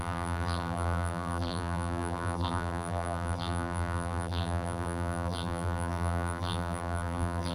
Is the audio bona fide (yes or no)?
no